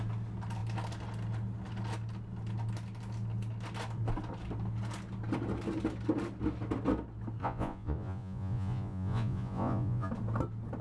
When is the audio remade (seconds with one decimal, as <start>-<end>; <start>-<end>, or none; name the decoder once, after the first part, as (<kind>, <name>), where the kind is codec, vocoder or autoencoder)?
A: 7.4-10.1 (vocoder, Vocos)